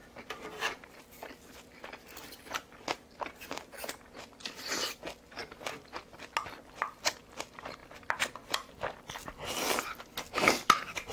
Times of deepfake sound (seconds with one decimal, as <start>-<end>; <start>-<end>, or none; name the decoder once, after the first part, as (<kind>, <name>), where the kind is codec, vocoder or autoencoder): none